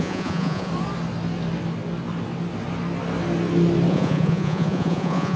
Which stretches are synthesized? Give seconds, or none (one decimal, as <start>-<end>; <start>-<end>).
0.0-0.7; 3.9-5.4